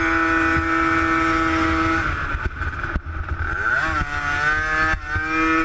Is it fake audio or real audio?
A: real